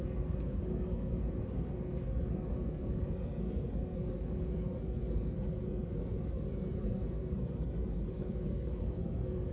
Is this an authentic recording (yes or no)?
no